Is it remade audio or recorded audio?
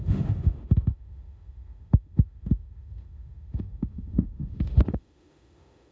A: remade